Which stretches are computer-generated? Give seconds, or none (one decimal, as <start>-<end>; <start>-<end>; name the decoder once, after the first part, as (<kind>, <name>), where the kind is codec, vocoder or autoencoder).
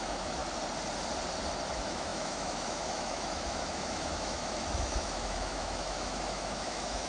0.0-0.4 (autoencoder, DAC-VAE); 1.7-7.1